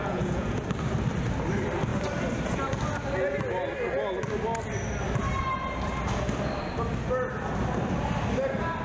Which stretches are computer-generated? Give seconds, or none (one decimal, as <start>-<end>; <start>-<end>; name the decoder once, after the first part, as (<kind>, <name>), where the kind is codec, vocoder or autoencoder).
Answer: 0.0-0.6 (vocoder, Vocos)